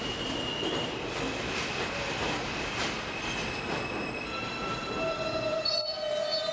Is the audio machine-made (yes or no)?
no